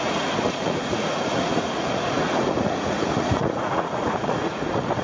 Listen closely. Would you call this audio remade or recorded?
remade